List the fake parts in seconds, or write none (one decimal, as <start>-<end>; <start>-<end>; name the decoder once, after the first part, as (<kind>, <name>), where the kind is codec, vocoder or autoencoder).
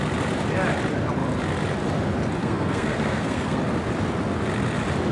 2.4-3.6 (codec, SNAC)